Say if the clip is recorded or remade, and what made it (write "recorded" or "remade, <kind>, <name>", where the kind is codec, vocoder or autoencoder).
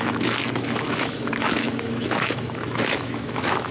remade, autoencoder, DAC-VAE